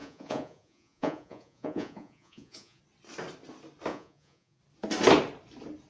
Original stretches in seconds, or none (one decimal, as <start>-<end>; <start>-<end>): 2.8-3.9; 4.6-5.9